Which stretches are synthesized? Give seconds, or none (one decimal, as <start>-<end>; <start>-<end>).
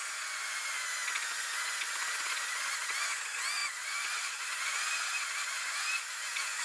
0.0-6.6